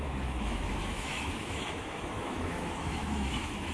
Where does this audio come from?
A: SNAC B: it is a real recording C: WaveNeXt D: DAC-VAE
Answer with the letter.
D